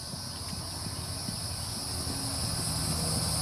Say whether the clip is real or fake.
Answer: real